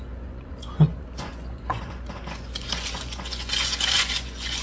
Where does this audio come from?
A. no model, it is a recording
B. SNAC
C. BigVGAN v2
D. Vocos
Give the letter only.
D